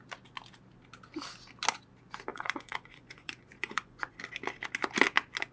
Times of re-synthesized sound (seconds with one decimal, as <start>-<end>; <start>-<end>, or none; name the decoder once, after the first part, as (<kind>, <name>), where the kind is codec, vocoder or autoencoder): 2.3-4.2 (vocoder, Vocos)